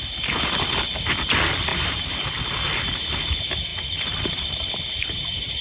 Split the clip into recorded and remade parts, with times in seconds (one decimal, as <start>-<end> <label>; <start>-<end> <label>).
0.0-1.7 recorded; 1.7-2.3 remade; 2.3-5.6 recorded